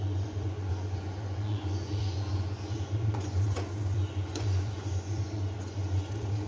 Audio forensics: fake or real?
fake